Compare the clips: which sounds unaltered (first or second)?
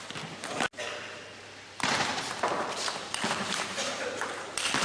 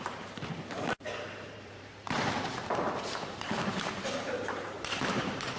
first